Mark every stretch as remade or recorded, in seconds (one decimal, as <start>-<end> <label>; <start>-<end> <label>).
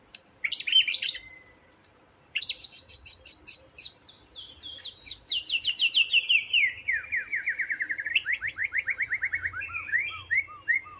0.0-8.6 remade; 8.6-9.5 recorded; 9.5-11.0 remade